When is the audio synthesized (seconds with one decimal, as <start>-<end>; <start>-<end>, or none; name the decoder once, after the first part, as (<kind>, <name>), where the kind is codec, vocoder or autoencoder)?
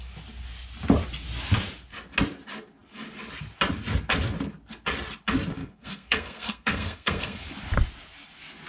5.6-7.5 (codec, SNAC)